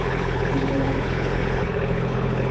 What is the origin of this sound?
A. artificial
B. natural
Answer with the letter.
A